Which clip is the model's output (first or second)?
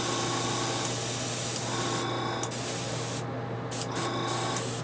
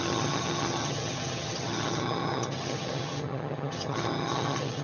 second